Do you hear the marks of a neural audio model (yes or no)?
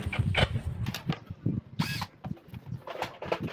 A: no